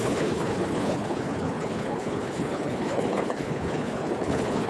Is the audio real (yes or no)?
no